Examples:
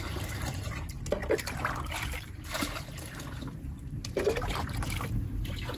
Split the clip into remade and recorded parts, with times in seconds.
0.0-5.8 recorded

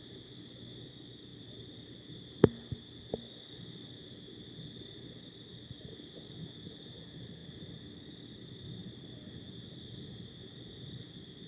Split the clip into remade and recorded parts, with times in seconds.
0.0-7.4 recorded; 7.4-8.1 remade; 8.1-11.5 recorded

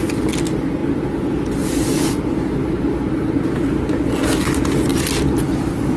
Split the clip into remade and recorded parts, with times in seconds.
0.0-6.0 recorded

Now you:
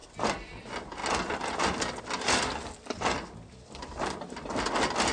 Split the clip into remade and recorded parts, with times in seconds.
0.0-5.1 recorded